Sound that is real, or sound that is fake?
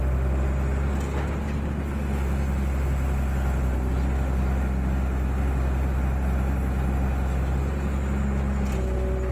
real